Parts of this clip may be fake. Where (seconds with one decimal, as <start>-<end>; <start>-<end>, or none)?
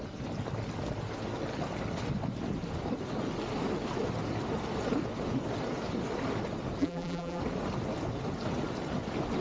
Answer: 6.8-7.4